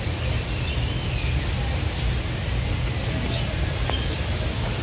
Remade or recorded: recorded